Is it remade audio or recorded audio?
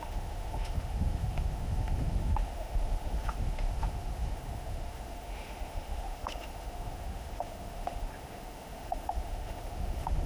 remade